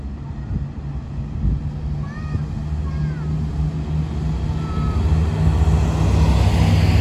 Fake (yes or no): no